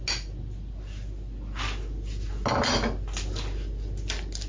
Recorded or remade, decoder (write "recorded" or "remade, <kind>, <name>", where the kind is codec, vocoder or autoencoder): recorded